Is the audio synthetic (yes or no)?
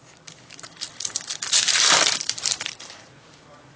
yes